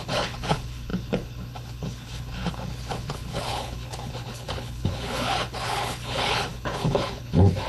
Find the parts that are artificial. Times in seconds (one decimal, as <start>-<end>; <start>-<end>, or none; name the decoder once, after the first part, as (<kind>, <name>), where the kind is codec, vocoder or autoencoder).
0.0-7.7 (codec, HILCodec)